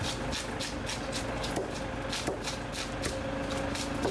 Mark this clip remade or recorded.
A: recorded